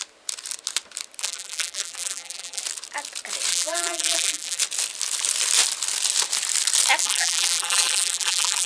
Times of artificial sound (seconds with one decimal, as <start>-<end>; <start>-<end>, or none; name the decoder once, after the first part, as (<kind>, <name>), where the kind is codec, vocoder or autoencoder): 1.2-2.6 (vocoder, BigVGAN v2); 3.5-4.6; 7.0-8.7